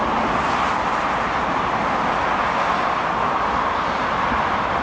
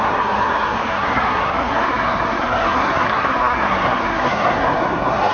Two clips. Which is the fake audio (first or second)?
second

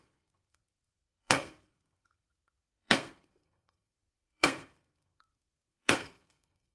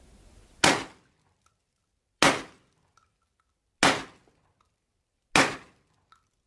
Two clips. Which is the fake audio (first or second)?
first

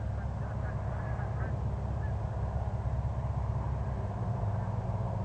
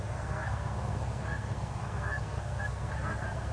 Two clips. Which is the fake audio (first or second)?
second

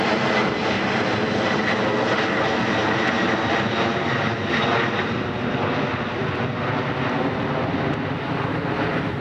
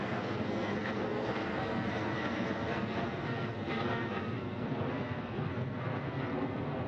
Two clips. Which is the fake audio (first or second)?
second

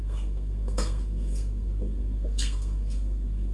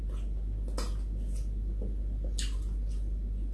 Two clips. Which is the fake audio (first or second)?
first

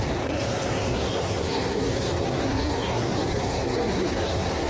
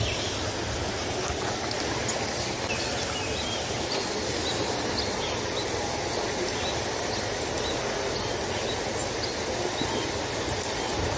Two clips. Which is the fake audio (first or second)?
first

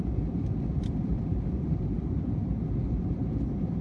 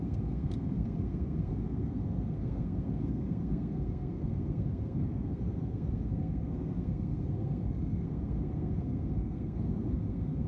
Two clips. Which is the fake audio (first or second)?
second